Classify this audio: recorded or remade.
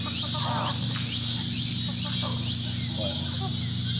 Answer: recorded